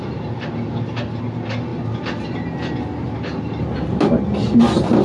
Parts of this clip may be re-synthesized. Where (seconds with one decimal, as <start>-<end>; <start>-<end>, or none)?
none

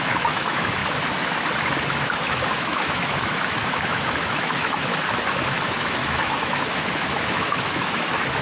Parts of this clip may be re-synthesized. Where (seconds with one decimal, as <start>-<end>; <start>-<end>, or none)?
0.0-0.8; 2.0-4.9; 5.4-8.4

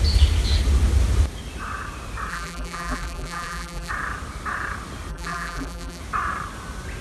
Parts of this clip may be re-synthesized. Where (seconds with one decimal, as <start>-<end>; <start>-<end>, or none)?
2.3-3.9; 5.1-6.0

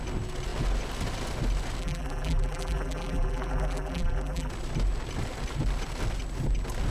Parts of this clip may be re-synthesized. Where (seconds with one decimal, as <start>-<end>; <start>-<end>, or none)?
1.8-4.5

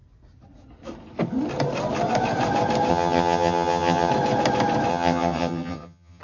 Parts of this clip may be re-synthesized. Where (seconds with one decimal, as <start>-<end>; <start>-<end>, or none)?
2.9-4.1; 4.9-6.2

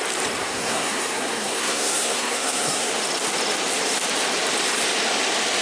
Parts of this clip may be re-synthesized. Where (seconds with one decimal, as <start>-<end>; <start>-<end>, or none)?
0.4-2.9

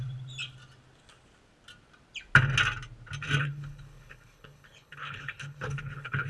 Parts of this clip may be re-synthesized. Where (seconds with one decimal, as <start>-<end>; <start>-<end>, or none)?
3.4-6.3

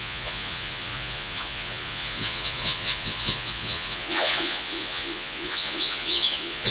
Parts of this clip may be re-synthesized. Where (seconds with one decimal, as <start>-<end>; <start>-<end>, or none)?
0.0-6.7